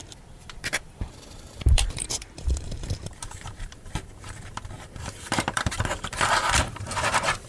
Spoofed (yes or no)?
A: yes